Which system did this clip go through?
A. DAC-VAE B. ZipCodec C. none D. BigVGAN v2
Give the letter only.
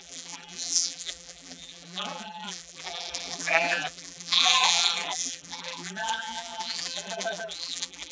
D